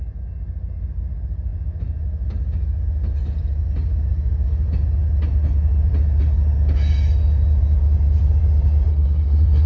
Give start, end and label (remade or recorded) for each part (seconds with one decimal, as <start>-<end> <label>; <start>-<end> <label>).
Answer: 0.0-8.9 recorded; 8.9-9.7 remade